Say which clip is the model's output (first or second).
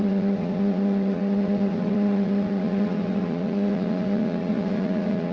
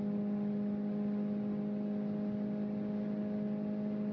first